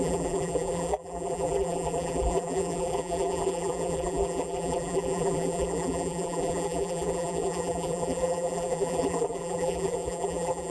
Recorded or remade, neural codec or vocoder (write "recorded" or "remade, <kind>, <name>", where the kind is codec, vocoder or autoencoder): remade, vocoder, BigVGAN v2